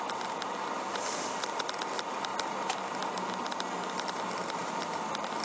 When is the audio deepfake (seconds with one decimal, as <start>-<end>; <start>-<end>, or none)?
4.6-5.4